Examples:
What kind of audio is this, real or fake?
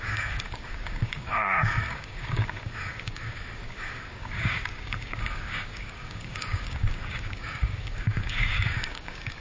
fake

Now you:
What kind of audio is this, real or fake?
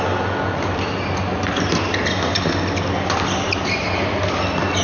real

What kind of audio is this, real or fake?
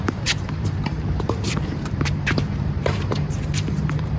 fake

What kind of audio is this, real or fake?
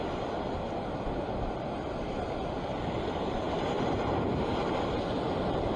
real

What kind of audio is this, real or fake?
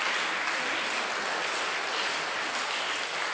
real